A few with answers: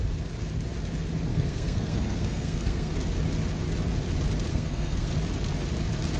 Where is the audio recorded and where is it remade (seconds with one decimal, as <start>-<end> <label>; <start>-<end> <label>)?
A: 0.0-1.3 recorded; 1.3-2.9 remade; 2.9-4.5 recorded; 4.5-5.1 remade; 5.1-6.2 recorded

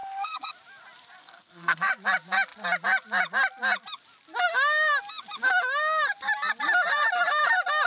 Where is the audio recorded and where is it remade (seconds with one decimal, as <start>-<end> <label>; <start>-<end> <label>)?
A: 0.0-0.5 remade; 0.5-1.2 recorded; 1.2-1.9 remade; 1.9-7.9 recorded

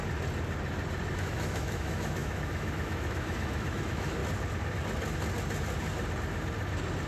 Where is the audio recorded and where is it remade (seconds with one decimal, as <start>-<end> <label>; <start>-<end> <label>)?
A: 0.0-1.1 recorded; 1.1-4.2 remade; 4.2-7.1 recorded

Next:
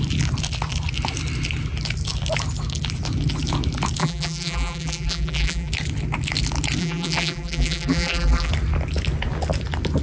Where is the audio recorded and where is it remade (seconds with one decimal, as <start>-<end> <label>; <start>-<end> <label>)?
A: 0.0-4.0 recorded; 4.0-5.7 remade; 5.7-6.8 recorded; 6.8-8.5 remade; 8.5-10.0 recorded